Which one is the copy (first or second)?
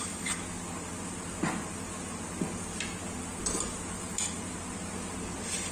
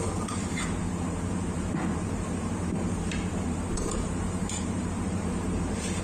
second